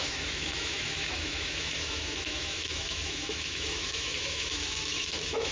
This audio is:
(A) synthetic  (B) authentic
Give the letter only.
A